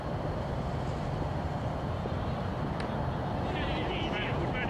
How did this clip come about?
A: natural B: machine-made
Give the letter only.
B